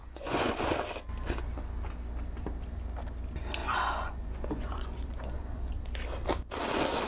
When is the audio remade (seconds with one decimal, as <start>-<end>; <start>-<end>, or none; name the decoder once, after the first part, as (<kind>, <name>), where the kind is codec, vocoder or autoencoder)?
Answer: 0.0-0.5 (vocoder, Vocos); 3.6-5.7

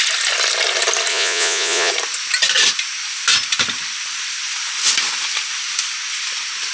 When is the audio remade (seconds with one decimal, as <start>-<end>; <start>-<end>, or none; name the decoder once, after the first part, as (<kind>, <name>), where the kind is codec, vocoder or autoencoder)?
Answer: 1.1-1.9 (vocoder, Vocos)